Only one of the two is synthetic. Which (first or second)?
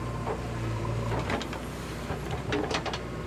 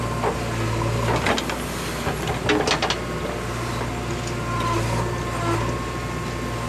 first